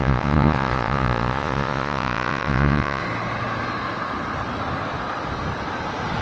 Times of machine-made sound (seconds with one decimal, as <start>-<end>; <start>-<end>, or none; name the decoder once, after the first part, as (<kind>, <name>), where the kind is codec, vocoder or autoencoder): 0.0-3.0 (vocoder, Vocos)